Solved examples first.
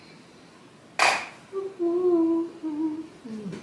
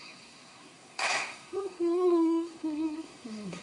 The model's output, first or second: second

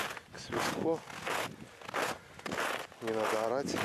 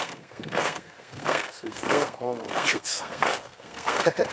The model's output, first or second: second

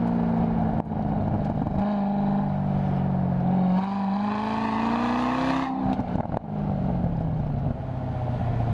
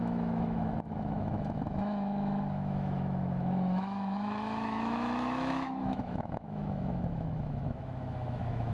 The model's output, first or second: second